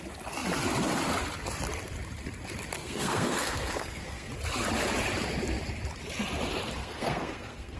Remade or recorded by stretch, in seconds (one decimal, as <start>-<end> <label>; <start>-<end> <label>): 0.0-2.8 recorded; 2.8-4.3 remade; 4.3-6.8 recorded; 6.8-7.8 remade